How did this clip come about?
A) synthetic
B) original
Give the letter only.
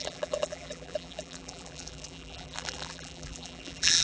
A